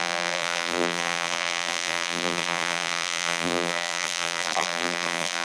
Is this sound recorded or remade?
remade